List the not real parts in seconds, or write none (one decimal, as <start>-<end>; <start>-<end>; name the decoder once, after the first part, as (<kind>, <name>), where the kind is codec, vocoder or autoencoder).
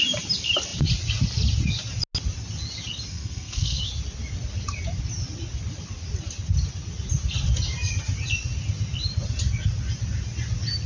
3.1-3.8 (codec, SNAC)